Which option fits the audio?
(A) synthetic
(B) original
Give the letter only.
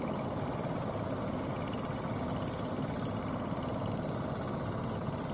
B